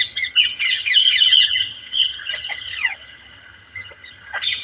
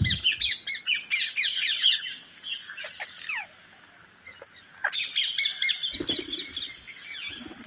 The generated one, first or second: first